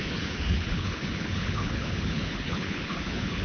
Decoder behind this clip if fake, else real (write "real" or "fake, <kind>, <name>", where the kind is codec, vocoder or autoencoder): fake, codec, HILCodec